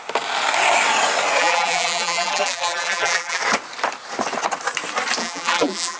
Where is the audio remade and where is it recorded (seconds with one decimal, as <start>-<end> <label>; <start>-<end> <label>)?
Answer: 0.0-1.4 recorded; 1.4-3.4 remade; 3.4-5.2 recorded; 5.2-6.0 remade